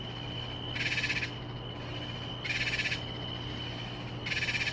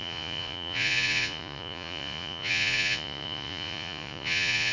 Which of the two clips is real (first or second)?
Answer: first